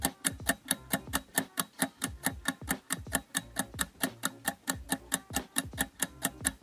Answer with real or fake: real